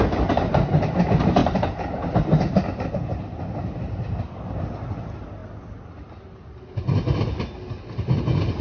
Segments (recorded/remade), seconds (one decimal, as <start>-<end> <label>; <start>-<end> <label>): 0.0-8.6 recorded